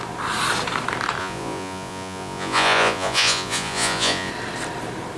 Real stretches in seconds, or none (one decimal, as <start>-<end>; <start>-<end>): 0.0-1.2; 4.3-5.2